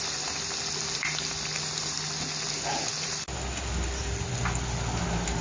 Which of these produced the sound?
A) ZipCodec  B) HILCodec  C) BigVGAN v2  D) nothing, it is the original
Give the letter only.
D